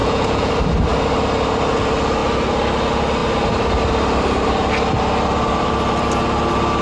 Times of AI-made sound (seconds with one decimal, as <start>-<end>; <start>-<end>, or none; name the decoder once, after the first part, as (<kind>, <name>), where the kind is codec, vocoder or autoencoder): 0.0-0.5 (vocoder, Vocos)